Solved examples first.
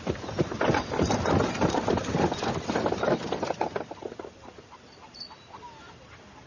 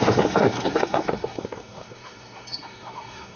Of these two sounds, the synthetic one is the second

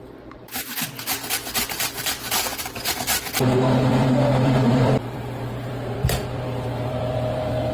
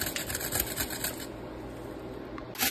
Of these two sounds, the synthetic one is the first